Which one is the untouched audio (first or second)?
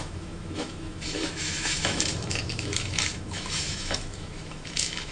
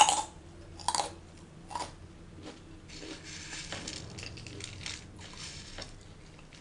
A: second